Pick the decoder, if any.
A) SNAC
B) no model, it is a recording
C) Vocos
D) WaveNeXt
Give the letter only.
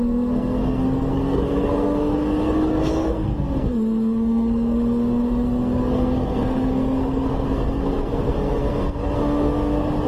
A